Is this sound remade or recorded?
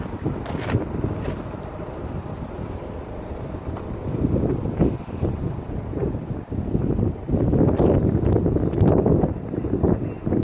recorded